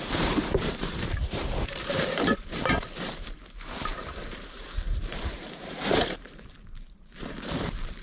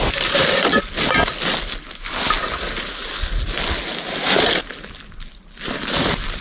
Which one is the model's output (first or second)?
first